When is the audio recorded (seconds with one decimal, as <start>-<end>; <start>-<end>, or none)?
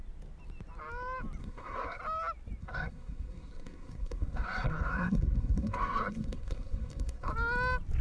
0.0-1.4; 2.0-2.6; 7.3-8.0